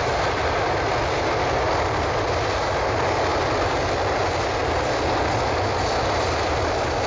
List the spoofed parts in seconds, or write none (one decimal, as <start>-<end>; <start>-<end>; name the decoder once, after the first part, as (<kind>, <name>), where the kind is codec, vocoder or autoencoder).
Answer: none